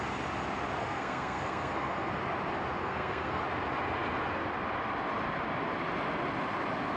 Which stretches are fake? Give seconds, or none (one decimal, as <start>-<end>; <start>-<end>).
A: 0.8-2.2; 2.8-3.4